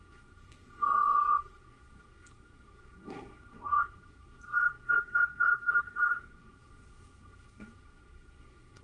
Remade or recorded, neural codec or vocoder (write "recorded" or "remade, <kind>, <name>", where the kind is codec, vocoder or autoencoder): remade, codec, SNAC